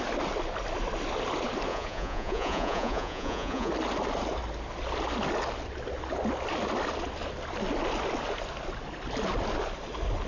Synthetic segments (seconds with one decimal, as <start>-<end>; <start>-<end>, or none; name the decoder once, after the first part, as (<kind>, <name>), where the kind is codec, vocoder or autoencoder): 1.7-3.7 (vocoder, Vocos)